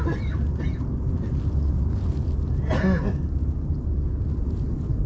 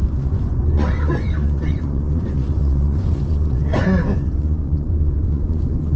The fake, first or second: second